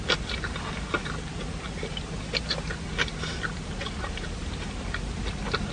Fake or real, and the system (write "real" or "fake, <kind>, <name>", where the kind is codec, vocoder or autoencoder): real